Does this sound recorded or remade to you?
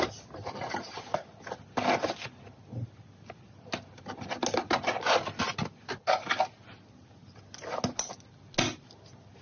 recorded